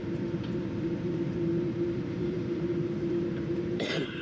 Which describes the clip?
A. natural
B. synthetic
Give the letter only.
B